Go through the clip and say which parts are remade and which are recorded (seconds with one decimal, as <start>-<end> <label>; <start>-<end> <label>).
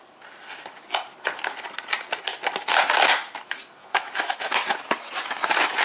0.0-3.8 recorded; 3.8-4.7 remade; 4.7-5.8 recorded